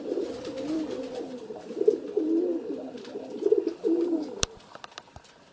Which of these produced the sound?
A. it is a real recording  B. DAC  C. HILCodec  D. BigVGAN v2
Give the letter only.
A